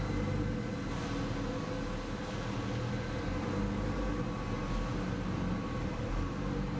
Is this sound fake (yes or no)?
no